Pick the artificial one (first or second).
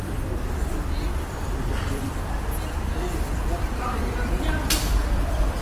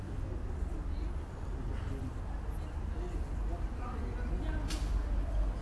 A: first